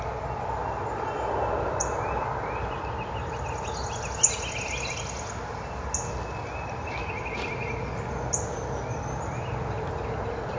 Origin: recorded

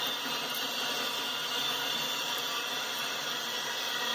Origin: recorded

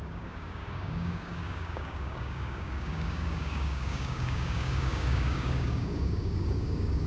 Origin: remade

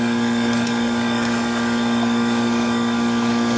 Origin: remade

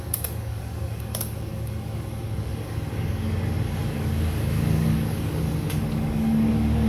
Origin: remade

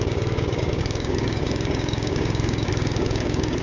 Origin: remade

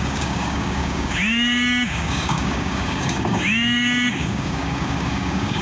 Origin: remade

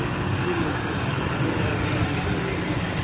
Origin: remade